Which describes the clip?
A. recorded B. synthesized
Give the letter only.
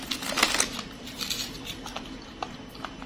A